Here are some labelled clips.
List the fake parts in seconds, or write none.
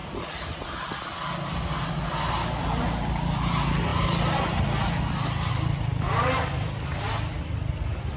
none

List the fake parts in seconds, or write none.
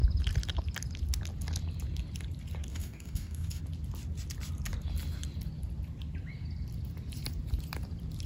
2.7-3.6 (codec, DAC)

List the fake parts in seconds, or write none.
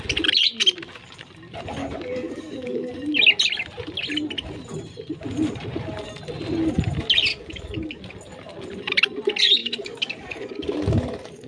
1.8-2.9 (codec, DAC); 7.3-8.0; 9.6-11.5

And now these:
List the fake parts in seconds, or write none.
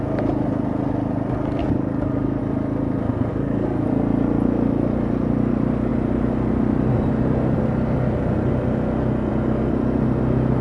1.6-2.4 (codec, DAC); 3.3-3.9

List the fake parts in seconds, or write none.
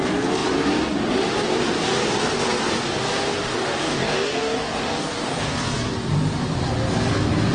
3.4-5.5 (codec, DAC)